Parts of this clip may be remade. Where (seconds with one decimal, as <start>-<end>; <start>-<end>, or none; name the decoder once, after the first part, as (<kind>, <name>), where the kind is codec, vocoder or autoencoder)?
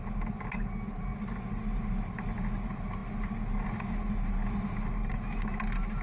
none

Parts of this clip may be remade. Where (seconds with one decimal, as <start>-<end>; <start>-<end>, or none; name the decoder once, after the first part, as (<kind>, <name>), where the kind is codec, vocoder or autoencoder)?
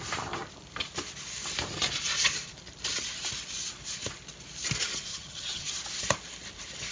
5.1-5.7 (vocoder, HiFi-GAN)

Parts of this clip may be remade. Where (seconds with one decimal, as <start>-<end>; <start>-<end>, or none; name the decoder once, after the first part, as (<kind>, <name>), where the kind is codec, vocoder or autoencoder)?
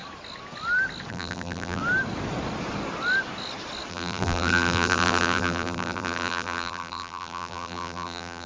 1.1-1.8 (vocoder, BigVGAN v2); 3.9-8.5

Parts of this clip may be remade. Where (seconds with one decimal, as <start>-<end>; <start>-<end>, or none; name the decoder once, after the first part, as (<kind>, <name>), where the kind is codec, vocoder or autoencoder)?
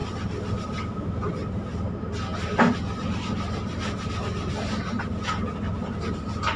none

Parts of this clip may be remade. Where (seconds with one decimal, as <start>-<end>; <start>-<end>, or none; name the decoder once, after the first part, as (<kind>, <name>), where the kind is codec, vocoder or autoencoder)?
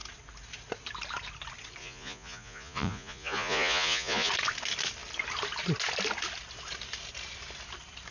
1.8-4.3 (vocoder, Vocos)